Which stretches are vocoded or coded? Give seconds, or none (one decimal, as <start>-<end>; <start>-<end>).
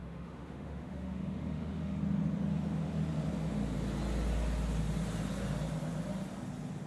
0.0-2.0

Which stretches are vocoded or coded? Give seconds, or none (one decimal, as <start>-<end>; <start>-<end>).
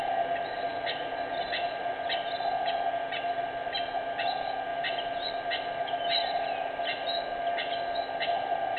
none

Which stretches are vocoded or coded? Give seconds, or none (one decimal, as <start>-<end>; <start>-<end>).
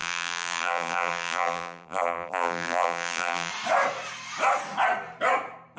0.0-3.5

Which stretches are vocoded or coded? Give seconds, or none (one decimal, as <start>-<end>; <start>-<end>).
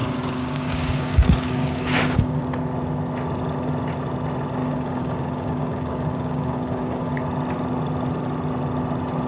0.0-2.4; 4.6-7.1